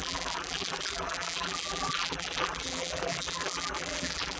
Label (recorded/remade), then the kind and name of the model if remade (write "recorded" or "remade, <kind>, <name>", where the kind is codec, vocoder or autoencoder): remade, vocoder, BigVGAN v2